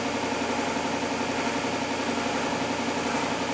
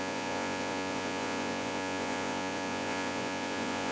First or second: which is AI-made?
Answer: second